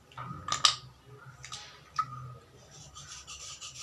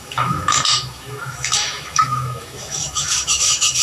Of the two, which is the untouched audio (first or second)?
first